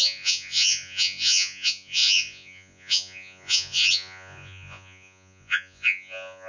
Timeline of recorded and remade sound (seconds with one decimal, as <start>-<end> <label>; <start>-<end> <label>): 0.0-6.5 remade